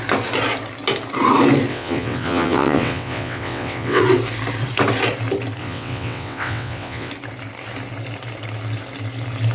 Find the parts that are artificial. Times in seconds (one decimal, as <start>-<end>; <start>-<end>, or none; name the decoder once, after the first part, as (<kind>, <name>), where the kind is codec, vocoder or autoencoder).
1.7-4.0 (vocoder, WaveNeXt); 5.6-7.1